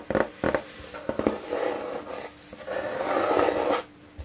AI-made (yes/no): no